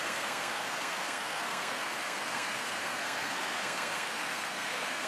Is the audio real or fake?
fake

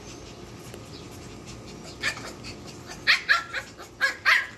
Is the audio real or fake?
real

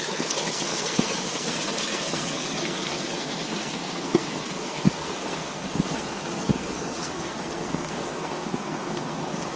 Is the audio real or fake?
fake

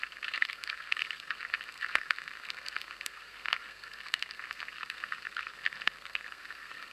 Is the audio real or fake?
fake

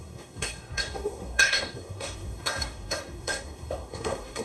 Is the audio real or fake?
fake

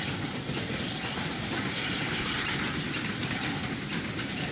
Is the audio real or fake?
real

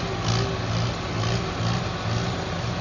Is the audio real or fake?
real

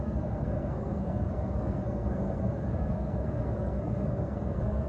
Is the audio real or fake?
fake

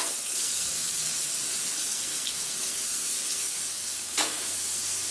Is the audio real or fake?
fake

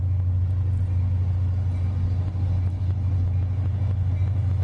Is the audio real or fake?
real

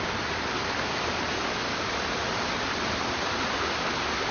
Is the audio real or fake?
real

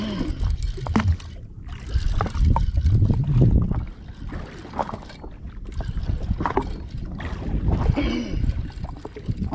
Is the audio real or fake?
real